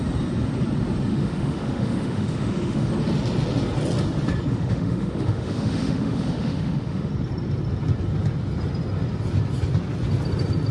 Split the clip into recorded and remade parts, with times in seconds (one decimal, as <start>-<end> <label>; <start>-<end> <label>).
0.0-1.1 recorded; 1.1-2.9 remade; 2.9-4.5 recorded; 4.5-7.1 remade; 7.1-10.7 recorded